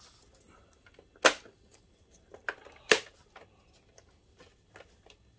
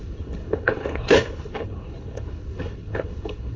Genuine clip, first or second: first